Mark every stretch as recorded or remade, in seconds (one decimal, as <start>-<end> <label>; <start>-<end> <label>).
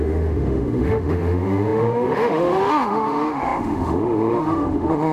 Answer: 0.0-5.1 remade